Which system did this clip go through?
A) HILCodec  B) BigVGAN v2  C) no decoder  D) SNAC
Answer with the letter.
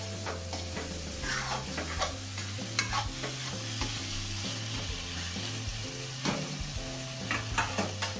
C